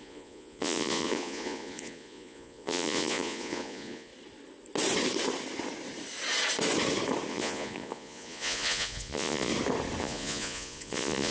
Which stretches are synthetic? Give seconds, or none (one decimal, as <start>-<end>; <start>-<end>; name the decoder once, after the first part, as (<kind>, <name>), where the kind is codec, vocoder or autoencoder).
0.0-4.1 (vocoder, Vocos); 7.3-9.5; 10.0-11.3